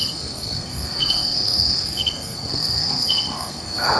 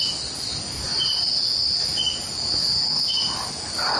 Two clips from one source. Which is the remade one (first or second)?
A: first